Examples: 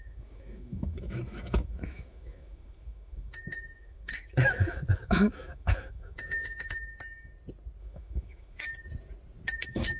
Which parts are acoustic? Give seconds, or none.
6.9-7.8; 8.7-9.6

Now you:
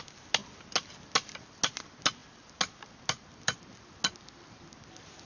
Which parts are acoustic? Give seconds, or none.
0.0-5.3

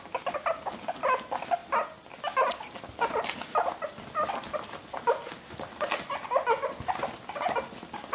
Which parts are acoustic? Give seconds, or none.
0.0-8.1

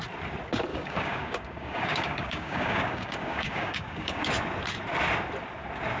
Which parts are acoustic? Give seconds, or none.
0.0-0.7; 4.3-6.0

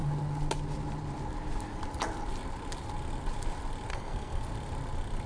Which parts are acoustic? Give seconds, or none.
0.0-3.9; 4.4-5.3

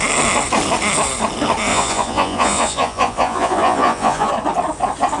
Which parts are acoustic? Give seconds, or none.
0.0-1.7; 4.3-5.2

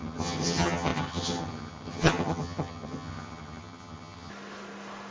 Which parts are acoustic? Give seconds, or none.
4.3-5.1